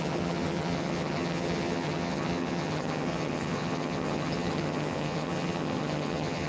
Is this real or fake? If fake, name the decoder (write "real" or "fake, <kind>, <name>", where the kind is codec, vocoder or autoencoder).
fake, vocoder, HiFi-GAN